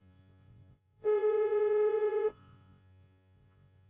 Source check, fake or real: fake